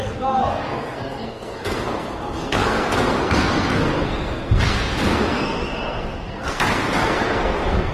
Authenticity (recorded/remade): remade